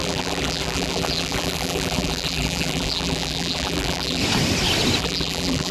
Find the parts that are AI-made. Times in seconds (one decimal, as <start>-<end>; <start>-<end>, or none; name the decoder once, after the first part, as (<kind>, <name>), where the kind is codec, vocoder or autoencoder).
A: 0.0-4.2 (vocoder, BigVGAN v2); 5.0-5.7